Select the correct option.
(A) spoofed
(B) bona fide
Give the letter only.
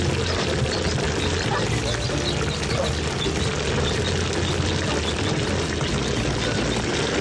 B